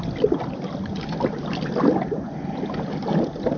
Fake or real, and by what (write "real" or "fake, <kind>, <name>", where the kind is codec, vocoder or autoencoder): real